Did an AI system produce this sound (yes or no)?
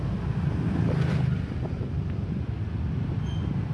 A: no